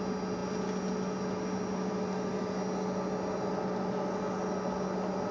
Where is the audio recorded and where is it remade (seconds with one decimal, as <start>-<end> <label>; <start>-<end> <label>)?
0.0-5.3 recorded